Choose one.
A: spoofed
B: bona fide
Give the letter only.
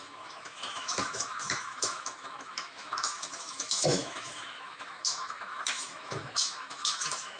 A